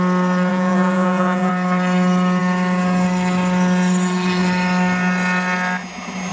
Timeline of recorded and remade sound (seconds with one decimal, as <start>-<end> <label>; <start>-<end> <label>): 0.0-0.5 recorded; 0.5-1.5 remade; 1.5-6.3 recorded